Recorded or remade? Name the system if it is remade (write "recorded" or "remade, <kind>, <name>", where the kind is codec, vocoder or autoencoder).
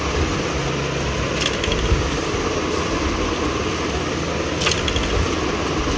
recorded